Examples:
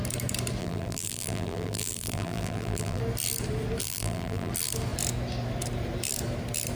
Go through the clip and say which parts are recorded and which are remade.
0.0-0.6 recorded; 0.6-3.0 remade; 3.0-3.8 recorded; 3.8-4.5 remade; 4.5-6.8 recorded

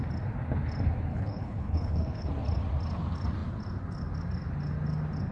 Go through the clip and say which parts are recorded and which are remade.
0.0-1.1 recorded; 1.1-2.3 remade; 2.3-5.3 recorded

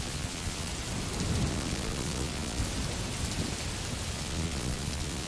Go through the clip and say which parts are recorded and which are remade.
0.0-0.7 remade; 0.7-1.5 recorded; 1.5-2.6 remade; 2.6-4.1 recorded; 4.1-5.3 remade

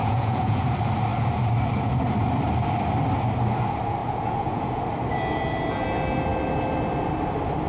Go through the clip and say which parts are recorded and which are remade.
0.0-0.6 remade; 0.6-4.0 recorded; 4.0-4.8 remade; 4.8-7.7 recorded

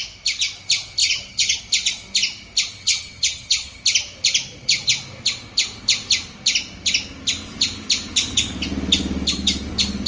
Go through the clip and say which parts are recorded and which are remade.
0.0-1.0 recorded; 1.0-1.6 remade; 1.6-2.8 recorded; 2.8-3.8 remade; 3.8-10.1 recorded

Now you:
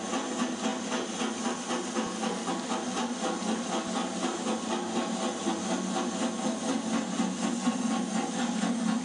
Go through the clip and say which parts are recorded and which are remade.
0.0-9.0 recorded

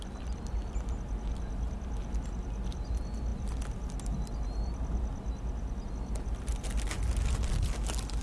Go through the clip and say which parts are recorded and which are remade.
0.0-8.2 recorded

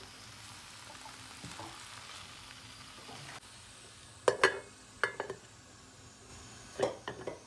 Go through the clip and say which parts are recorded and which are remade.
0.0-7.5 recorded